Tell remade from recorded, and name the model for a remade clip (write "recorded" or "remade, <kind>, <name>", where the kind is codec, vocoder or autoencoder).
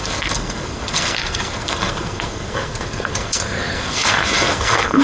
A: remade, codec, SNAC